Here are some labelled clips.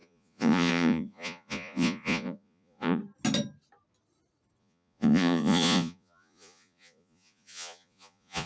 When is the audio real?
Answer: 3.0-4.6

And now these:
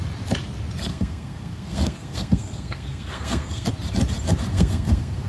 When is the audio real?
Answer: 0.0-0.9; 3.7-4.5

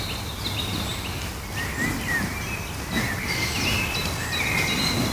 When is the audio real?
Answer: 0.0-5.1

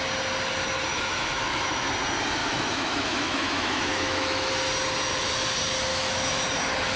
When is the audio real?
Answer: 0.0-0.9; 1.9-2.4; 4.5-5.9; 6.4-7.0

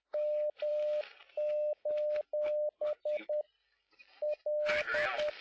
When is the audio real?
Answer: 0.0-5.4

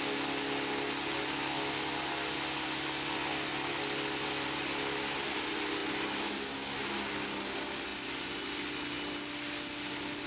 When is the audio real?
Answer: 0.0-10.3

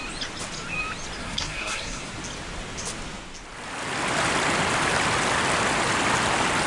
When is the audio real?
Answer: 0.0-1.2; 2.1-6.7